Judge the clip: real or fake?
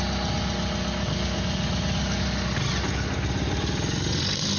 real